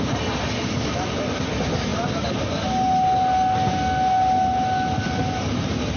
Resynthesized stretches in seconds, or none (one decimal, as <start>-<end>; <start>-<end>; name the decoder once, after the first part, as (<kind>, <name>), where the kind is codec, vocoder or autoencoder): none